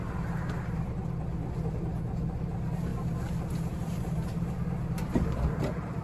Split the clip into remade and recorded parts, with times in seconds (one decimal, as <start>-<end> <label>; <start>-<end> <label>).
0.0-1.0 remade; 1.0-1.7 recorded; 1.7-2.9 remade; 2.9-3.7 recorded; 3.7-6.0 remade